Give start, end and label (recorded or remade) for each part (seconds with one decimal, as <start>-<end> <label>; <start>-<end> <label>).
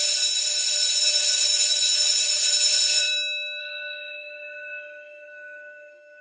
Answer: 0.0-3.6 recorded; 3.6-6.2 remade